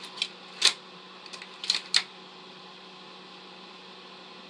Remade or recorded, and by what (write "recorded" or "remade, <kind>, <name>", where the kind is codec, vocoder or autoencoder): recorded